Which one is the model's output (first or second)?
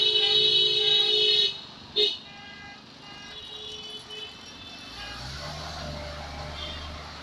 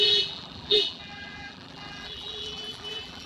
second